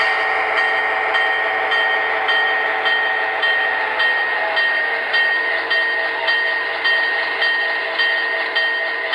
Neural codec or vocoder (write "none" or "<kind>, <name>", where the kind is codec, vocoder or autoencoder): none